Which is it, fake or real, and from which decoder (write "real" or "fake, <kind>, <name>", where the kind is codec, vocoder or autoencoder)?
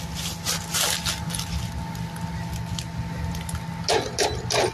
real